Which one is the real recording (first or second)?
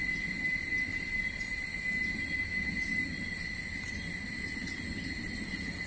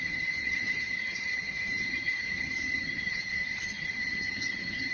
first